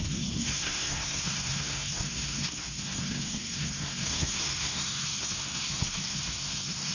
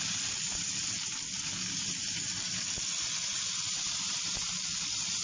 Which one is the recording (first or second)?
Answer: second